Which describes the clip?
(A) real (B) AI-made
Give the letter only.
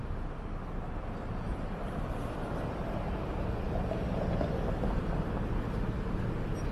A